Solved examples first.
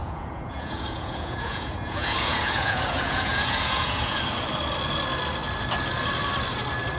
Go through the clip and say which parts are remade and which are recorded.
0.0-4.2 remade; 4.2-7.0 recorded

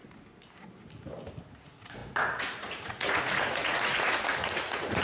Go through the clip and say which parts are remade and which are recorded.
0.0-1.5 recorded; 1.5-5.0 remade

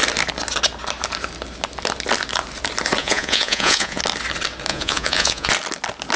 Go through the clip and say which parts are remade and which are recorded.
0.0-3.0 recorded; 3.0-4.0 remade; 4.0-4.7 recorded; 4.7-5.5 remade; 5.5-6.2 recorded

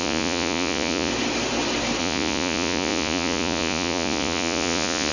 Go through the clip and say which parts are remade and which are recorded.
0.0-1.1 remade; 1.1-2.0 recorded; 2.0-5.1 remade

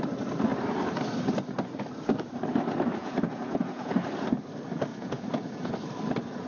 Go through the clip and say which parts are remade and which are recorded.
0.0-3.0 recorded; 3.0-3.9 remade; 3.9-4.9 recorded; 4.9-5.7 remade; 5.7-6.5 recorded

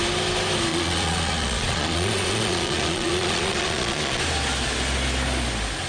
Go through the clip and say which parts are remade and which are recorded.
0.0-0.7 recorded; 0.7-4.2 remade; 4.2-5.9 recorded

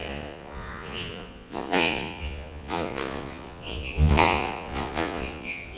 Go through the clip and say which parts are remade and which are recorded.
0.0-5.8 remade

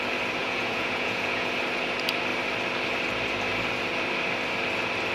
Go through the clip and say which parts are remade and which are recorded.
0.0-0.4 recorded; 0.4-1.5 remade; 1.5-5.1 recorded